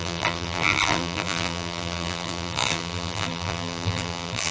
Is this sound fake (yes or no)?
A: yes